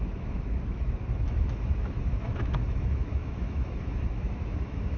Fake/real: fake